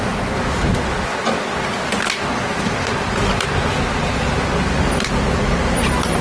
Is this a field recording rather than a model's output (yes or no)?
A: yes